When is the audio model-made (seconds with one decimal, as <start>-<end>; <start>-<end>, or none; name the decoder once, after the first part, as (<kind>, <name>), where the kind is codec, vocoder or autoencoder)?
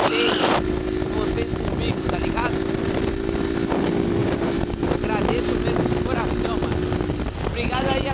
4.2-4.8 (vocoder, BigVGAN v2)